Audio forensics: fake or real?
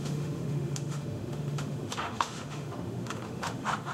fake